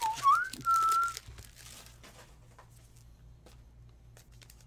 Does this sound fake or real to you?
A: real